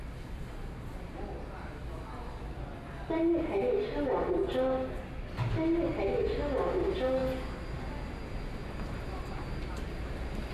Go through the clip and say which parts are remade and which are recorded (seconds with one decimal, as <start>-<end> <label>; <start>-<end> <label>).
0.0-10.5 recorded